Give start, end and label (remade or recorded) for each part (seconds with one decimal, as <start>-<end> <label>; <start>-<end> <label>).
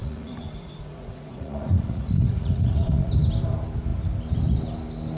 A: 0.0-3.1 remade; 3.1-5.2 recorded